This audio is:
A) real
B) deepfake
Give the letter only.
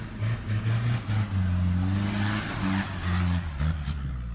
A